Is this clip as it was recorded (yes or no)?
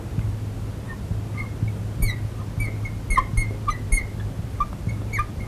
yes